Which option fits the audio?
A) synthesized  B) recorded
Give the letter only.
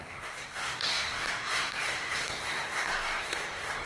A